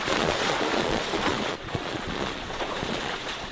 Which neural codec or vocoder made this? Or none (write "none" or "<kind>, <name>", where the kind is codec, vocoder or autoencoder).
vocoder, Vocos